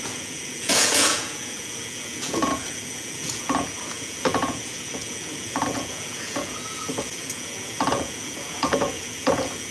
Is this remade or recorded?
remade